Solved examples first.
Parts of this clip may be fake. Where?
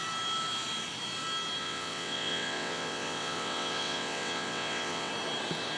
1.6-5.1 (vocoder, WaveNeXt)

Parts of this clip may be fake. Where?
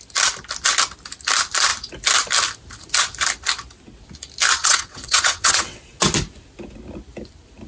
4.6-5.8 (vocoder, WaveNeXt)